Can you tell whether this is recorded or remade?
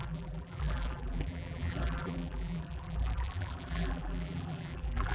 remade